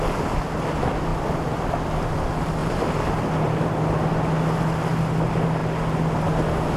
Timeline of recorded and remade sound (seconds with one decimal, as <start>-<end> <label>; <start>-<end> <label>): 0.0-2.6 recorded; 2.6-3.7 remade; 3.7-6.8 recorded